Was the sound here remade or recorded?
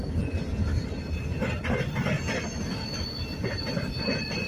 recorded